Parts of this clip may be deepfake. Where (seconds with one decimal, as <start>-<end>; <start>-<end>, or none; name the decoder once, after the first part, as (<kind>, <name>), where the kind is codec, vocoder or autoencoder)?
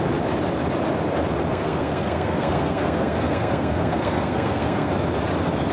1.5-4.9 (codec, SNAC)